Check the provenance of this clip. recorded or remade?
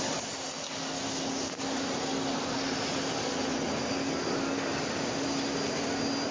recorded